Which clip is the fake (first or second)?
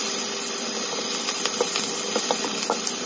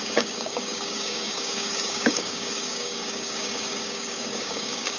second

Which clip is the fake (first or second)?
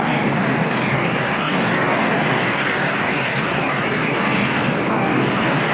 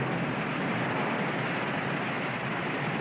first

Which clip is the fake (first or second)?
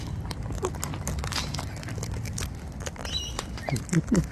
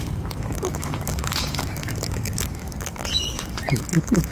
second